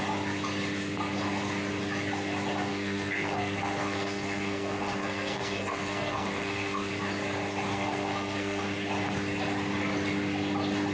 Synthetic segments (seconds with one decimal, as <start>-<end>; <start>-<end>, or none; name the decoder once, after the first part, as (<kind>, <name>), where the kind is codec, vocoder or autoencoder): 2.7-6.9 (codec, SNAC); 7.7-8.6